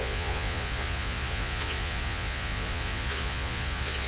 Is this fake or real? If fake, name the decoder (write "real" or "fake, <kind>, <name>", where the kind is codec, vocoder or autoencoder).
fake, vocoder, Vocos